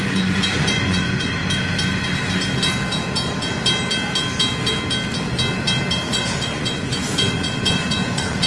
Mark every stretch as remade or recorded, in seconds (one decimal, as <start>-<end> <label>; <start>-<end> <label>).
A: 0.0-1.4 remade; 1.4-6.1 recorded; 6.1-8.5 remade